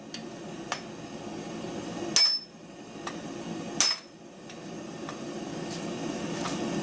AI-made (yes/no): no